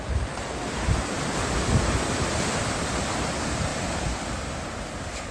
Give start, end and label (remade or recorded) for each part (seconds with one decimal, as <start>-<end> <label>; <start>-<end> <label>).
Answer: 0.0-5.3 recorded

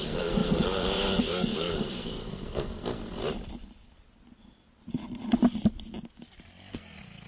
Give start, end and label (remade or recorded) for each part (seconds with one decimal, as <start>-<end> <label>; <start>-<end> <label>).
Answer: 0.0-3.2 remade; 3.2-6.7 recorded; 6.7-7.3 remade